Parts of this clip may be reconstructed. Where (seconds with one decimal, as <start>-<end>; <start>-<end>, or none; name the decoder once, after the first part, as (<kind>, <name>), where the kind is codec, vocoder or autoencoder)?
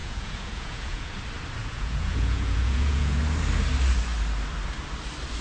0.0-1.1 (vocoder, Vocos); 1.6-3.2